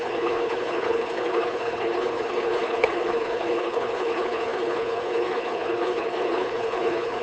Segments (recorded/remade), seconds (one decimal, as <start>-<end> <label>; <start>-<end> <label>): 0.0-7.2 remade